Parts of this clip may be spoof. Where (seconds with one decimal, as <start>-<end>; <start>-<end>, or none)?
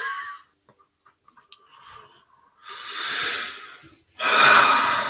none